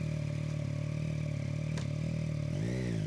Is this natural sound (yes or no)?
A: yes